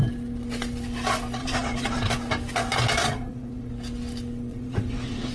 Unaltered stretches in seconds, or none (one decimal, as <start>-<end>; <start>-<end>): 0.0-1.4; 2.1-3.0; 3.7-4.5